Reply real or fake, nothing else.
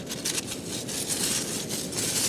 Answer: real